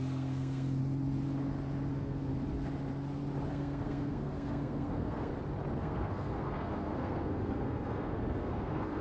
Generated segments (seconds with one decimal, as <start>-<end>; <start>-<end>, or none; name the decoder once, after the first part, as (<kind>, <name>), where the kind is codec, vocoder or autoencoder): 0.0-0.8 (codec, SNAC); 1.9-2.3; 3.5-5.3; 5.8-9.0